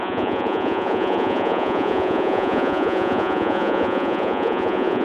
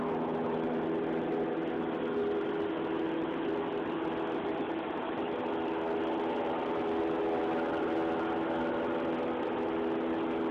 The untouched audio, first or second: second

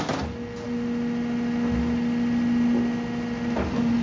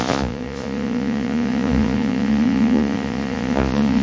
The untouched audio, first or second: first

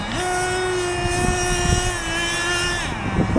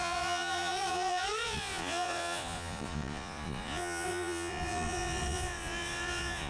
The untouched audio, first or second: first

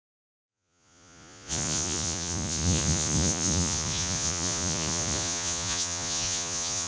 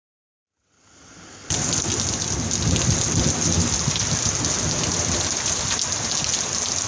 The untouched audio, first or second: second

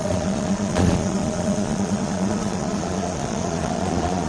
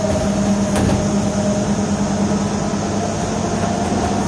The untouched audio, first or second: second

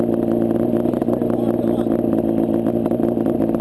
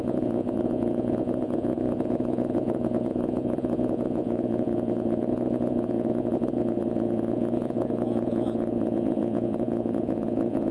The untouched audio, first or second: first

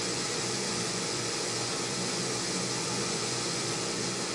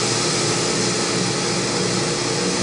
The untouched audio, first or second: second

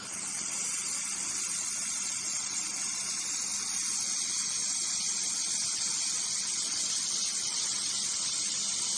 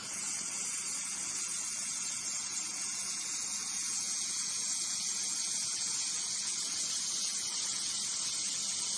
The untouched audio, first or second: first